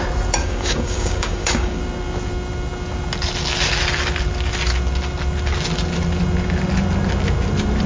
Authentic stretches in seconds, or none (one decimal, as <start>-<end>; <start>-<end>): 0.0-0.4; 1.8-7.9